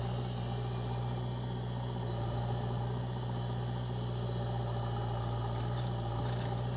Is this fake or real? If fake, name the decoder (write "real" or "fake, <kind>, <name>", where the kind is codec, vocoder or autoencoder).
real